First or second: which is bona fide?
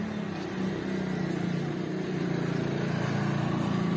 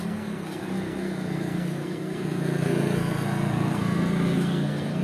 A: first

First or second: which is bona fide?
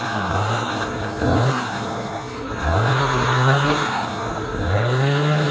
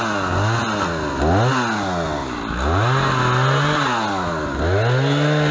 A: second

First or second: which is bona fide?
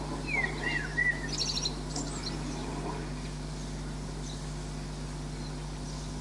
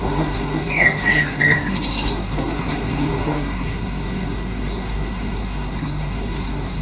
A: first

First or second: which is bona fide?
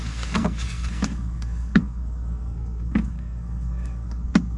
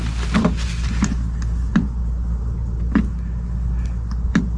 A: second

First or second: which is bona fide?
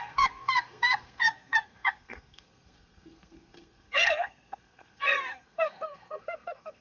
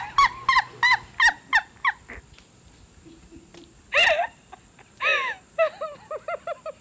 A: second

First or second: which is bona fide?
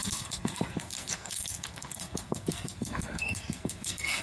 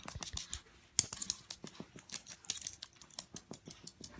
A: second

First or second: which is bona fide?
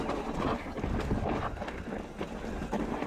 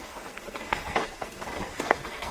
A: first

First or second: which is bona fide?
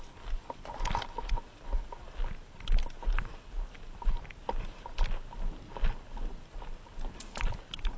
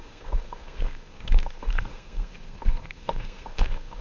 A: first